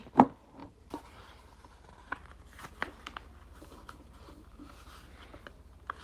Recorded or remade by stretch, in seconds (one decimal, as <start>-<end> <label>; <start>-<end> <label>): 0.0-2.2 remade; 2.2-3.4 recorded; 3.4-4.6 remade; 4.6-5.4 recorded; 5.4-6.0 remade